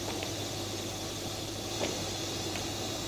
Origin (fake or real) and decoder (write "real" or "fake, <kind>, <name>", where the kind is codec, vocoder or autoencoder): fake, vocoder, BigVGAN v2